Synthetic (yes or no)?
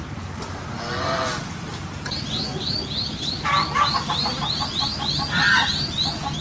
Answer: no